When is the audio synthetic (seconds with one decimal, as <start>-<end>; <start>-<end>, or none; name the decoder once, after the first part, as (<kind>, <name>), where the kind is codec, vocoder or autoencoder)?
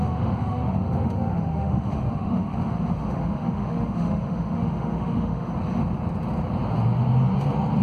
0.0-5.5 (autoencoder, DAC-VAE)